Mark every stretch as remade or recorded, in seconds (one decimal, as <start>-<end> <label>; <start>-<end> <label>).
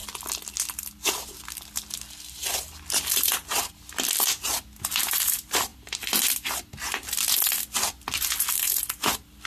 0.0-4.8 recorded; 4.8-5.7 remade; 5.7-9.1 recorded; 9.1-9.5 remade